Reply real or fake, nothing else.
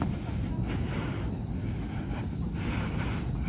real